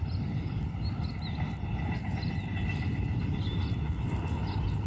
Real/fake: real